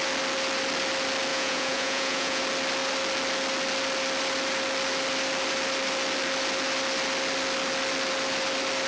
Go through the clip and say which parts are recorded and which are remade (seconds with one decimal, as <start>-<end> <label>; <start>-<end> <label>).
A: 0.0-1.3 recorded; 1.3-2.4 remade; 2.4-8.9 recorded